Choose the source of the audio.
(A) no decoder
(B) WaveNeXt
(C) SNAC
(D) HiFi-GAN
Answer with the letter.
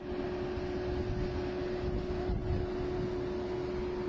A